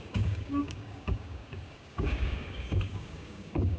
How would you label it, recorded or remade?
remade